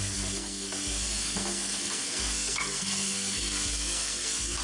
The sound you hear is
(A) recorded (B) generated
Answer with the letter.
B